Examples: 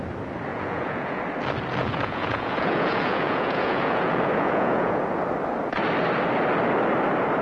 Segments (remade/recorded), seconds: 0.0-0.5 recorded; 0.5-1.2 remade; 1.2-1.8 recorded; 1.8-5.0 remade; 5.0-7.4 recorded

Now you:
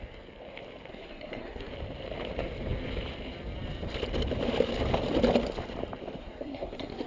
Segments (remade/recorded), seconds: 0.0-0.9 recorded; 0.9-1.7 remade; 1.7-6.2 recorded; 6.2-7.1 remade

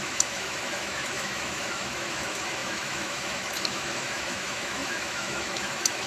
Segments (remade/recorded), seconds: 0.0-6.1 remade

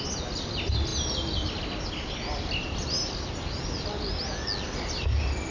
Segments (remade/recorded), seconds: 0.0-5.5 recorded